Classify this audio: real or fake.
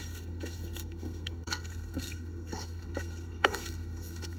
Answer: fake